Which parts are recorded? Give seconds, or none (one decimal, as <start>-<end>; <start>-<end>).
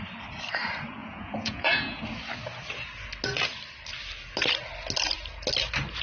0.0-1.0; 2.0-6.0